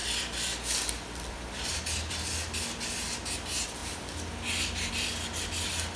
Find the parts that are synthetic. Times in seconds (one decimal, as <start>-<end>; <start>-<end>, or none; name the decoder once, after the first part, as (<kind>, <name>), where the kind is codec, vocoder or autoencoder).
none